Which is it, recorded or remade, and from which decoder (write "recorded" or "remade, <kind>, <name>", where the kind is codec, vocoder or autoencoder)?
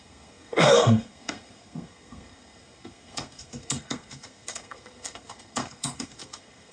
remade, codec, SNAC